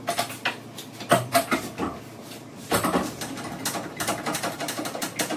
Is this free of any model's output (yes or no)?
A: yes